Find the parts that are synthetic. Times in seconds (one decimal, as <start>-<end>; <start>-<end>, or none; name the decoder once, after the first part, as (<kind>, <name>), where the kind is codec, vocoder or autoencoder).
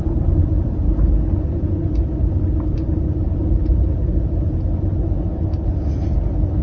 0.4-1.1 (vocoder, BigVGAN v2); 2.7-3.8